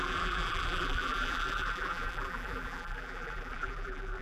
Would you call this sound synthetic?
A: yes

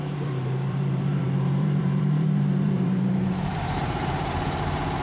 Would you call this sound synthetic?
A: yes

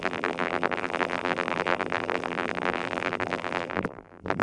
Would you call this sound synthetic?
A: yes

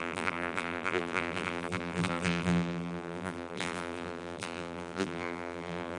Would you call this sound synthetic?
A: yes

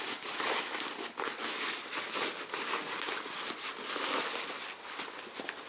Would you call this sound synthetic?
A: no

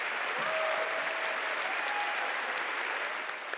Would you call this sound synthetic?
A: no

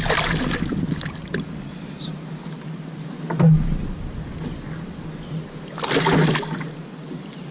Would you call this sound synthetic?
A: no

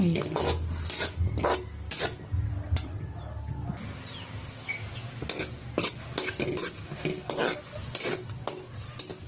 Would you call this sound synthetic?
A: no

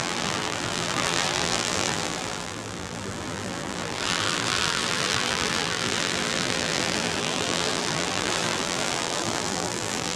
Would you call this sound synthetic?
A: yes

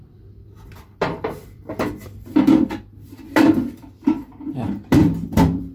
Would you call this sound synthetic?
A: yes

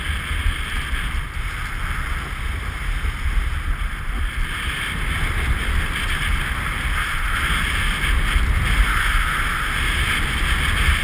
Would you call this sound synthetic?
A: no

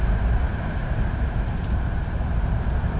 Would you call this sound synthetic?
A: yes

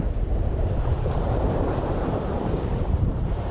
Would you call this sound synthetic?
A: yes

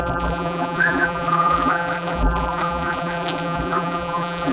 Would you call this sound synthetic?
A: yes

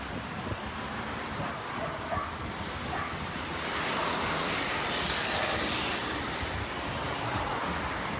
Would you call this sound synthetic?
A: yes